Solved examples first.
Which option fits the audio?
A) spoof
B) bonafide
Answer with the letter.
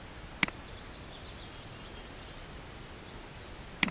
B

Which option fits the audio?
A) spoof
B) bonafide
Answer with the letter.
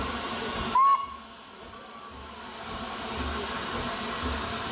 B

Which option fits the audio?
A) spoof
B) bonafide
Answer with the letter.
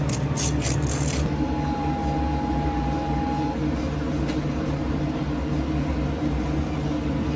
B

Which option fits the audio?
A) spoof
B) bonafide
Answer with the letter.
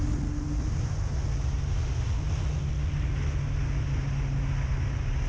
B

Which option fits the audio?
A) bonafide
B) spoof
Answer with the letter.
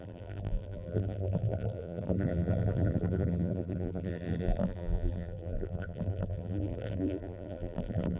B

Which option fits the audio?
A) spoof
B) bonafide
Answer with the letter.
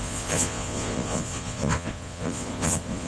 A